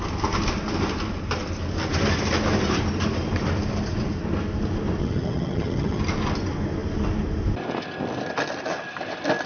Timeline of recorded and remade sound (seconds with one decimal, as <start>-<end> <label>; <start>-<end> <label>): 0.0-5.0 recorded; 5.0-6.0 remade; 6.0-9.5 recorded